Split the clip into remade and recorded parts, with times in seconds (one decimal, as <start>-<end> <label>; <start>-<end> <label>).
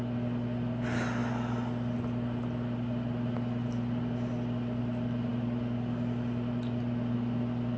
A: 0.0-7.8 recorded